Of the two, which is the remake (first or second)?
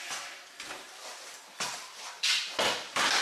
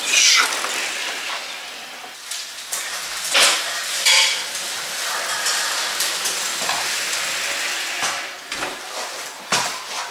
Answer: first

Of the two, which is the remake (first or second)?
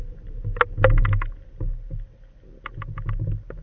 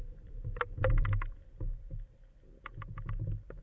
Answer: second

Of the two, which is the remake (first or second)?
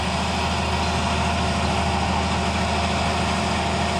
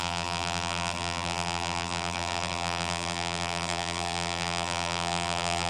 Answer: second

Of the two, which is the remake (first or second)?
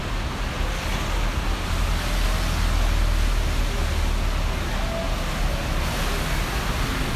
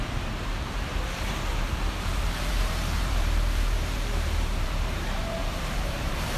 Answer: second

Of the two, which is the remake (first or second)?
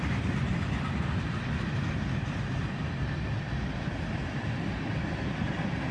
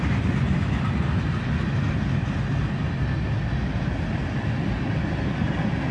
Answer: first